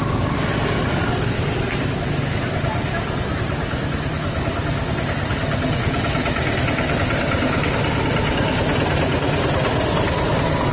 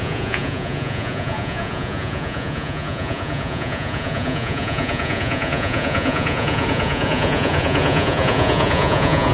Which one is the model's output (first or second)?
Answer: second